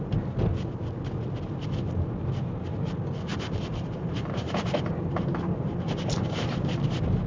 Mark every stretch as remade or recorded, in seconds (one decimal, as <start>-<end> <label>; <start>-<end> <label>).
0.0-3.3 recorded; 3.3-6.6 remade; 6.6-7.3 recorded